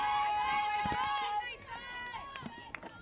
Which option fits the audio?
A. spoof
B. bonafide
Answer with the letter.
B